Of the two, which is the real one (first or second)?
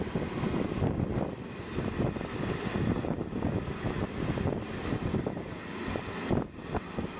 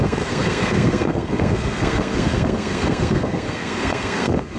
first